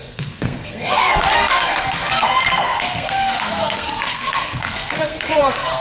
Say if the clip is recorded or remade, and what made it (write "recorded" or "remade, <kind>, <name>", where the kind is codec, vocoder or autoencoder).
remade, codec, SNAC